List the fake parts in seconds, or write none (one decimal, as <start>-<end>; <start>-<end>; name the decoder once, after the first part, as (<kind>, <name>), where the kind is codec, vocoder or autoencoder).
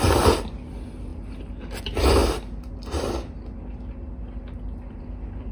none